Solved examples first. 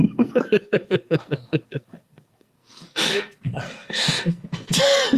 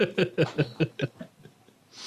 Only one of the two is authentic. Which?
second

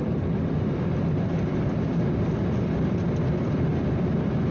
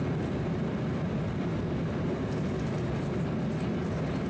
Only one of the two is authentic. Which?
second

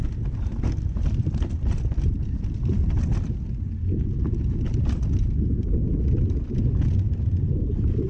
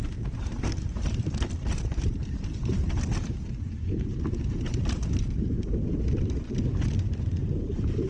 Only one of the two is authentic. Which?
first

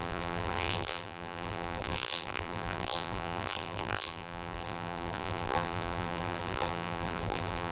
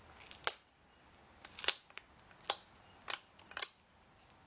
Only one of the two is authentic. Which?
second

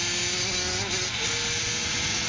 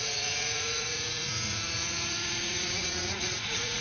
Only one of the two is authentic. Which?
first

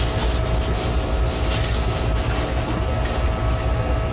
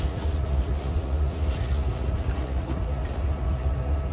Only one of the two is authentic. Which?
first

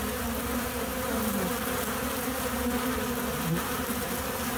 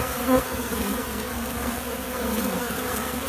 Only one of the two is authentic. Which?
first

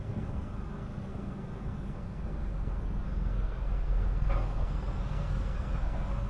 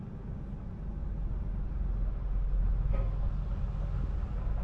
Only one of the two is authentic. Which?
second